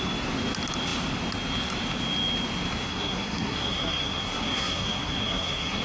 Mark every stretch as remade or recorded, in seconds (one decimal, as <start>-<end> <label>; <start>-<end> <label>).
0.0-2.9 recorded; 2.9-5.8 remade